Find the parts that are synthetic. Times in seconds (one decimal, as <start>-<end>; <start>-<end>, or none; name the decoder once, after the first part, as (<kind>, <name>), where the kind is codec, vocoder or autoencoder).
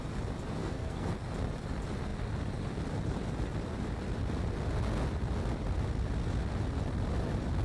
0.6-1.1 (codec, SNAC)